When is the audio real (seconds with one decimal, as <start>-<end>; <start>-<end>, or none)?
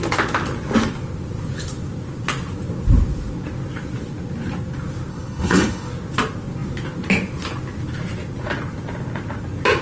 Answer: 0.0-5.1; 5.9-9.8